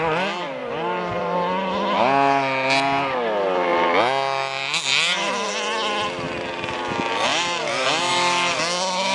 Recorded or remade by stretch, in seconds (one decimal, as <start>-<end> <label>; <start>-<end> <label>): 0.0-0.6 recorded; 0.6-1.2 remade; 1.2-7.3 recorded; 7.3-8.1 remade; 8.1-9.1 recorded